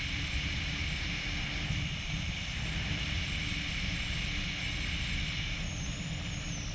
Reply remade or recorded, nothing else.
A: recorded